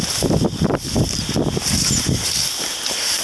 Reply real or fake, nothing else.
real